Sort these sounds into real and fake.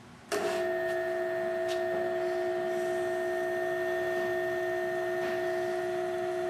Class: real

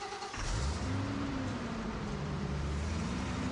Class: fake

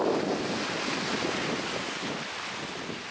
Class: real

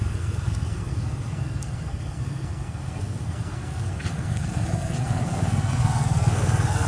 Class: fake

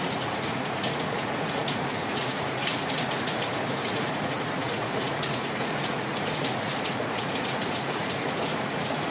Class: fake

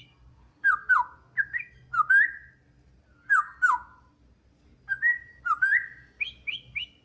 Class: real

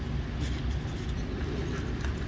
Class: real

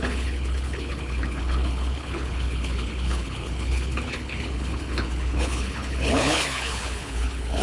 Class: fake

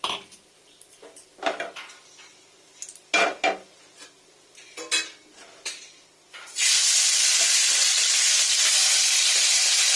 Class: real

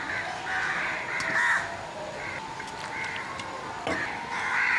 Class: real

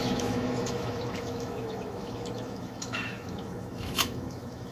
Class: fake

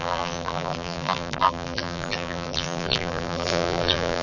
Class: fake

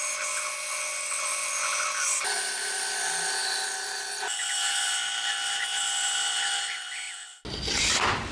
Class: real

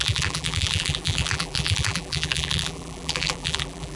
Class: fake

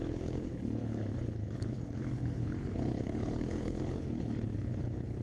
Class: fake